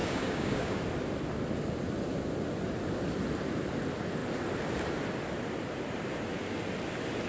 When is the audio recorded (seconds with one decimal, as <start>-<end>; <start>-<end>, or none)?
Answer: 0.8-7.3